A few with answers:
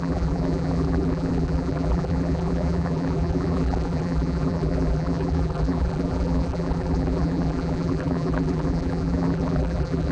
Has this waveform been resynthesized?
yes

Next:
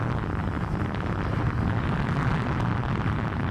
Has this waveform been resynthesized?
no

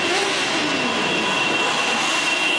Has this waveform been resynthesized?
no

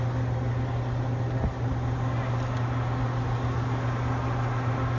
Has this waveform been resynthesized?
no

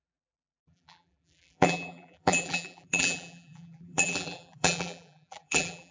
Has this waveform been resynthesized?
yes